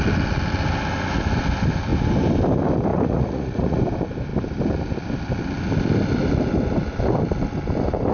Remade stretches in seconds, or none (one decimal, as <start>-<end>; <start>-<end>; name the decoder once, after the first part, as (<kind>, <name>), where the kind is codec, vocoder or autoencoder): 2.9-3.8 (vocoder, Vocos)